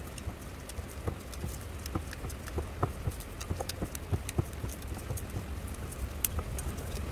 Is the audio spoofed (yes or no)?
no